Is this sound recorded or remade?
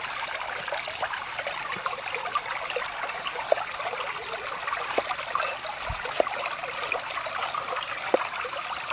recorded